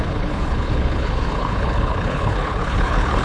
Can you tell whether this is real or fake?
fake